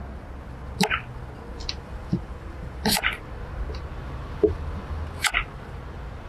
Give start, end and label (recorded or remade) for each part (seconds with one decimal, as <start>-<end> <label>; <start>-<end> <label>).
0.0-1.6 recorded; 1.6-3.0 remade; 3.0-6.3 recorded